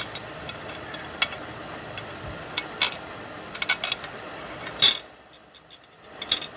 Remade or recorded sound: recorded